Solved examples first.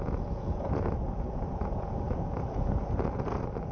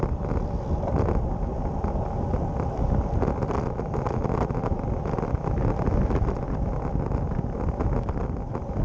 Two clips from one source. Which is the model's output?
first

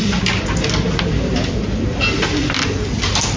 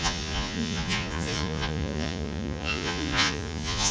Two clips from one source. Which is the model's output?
second